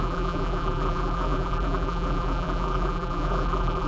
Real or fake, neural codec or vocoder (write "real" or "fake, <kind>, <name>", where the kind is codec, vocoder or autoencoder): fake, vocoder, BigVGAN v2